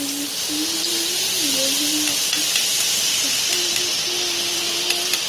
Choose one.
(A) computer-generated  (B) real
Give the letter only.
B